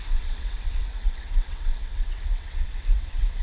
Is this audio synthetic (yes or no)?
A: yes